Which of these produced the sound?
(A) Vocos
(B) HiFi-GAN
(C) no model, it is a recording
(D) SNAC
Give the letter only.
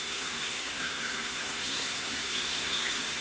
D